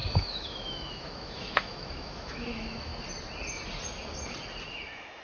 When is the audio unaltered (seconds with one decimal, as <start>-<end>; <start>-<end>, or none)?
2.9-4.7